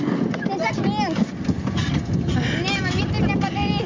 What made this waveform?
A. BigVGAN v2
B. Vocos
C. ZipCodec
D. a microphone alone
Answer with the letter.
D